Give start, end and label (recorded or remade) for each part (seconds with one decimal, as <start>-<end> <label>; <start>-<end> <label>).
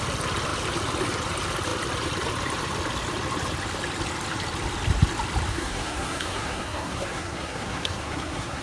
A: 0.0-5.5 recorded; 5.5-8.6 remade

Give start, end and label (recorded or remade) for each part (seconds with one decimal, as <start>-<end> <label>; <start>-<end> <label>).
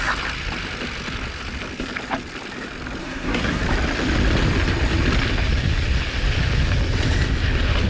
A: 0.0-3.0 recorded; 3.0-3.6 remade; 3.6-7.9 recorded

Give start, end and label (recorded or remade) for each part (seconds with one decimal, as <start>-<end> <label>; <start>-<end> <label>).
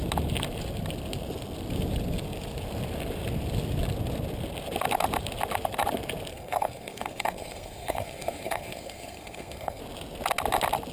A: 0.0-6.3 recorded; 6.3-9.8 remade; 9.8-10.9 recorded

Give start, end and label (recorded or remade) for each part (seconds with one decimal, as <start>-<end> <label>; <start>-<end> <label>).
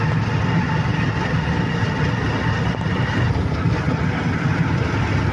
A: 0.0-5.3 recorded